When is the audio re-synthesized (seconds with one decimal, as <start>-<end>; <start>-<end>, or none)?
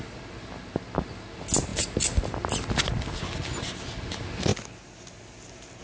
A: none